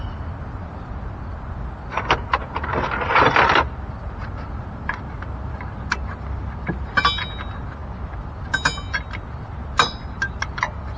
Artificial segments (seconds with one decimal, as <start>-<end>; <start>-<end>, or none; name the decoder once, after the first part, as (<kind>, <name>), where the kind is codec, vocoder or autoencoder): none